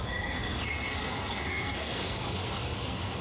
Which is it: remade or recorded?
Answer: remade